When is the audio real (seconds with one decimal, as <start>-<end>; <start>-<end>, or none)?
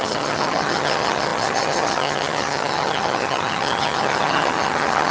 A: none